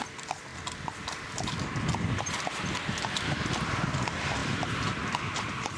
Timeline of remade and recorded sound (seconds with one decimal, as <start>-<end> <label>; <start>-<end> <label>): 0.0-4.4 recorded; 4.4-5.8 remade